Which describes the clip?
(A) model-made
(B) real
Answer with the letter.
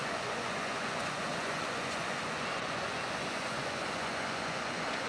A